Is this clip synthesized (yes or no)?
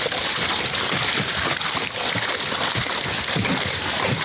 no